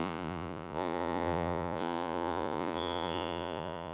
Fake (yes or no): yes